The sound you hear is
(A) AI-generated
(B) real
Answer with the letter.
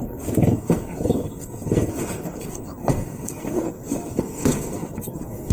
A